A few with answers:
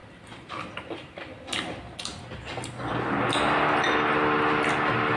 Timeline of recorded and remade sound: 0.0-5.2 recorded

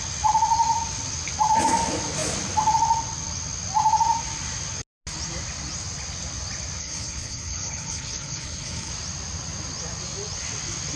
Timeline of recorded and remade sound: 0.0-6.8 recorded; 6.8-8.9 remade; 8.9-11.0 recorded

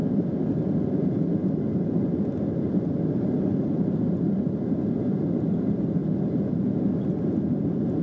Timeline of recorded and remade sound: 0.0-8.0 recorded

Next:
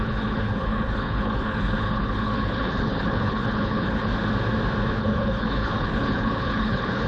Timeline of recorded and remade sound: 0.0-4.1 remade; 4.1-4.9 recorded; 4.9-7.1 remade

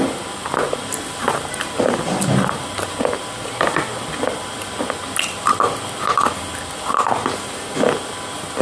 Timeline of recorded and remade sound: 0.0-8.6 recorded